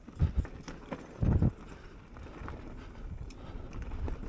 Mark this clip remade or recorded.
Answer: recorded